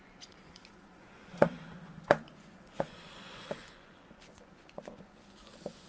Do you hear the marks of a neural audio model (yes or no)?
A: yes